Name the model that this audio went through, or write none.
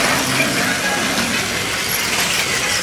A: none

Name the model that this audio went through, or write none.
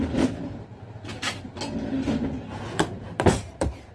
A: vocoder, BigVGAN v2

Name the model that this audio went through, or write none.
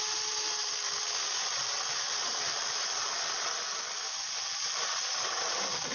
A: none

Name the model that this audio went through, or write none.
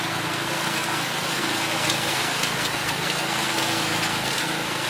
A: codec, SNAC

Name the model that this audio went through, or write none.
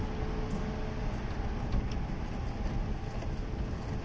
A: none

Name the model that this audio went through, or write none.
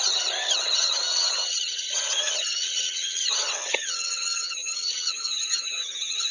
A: vocoder, HiFi-GAN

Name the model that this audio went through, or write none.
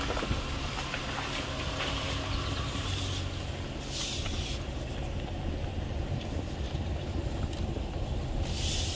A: none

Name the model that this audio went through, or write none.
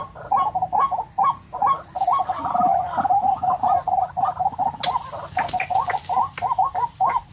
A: none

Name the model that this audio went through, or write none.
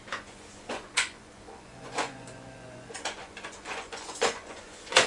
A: vocoder, Vocos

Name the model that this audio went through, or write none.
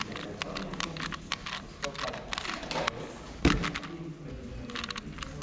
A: none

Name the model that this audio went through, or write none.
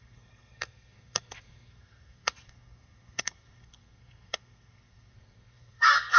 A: codec, SNAC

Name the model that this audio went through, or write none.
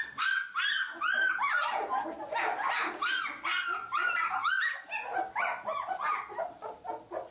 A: none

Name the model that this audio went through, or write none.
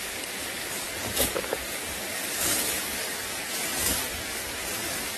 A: codec, DAC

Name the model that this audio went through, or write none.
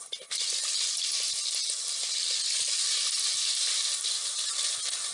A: none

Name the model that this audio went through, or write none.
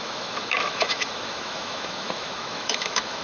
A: autoencoder, DAC-VAE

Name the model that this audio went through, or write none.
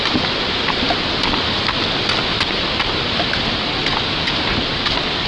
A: none